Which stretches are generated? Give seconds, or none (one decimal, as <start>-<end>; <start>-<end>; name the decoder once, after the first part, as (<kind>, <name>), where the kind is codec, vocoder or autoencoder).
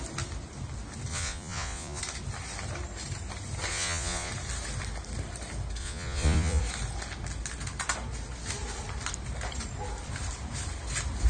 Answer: 1.1-2.0 (vocoder, Vocos); 3.7-4.3; 5.8-6.6